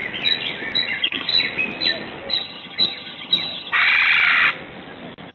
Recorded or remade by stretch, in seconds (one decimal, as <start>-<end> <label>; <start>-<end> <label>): 0.0-0.9 recorded; 0.9-1.3 remade; 1.3-2.3 recorded; 2.3-3.8 remade; 3.8-5.3 recorded